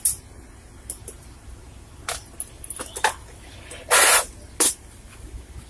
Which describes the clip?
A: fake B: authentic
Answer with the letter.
B